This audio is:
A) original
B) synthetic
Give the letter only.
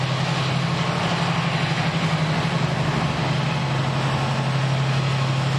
A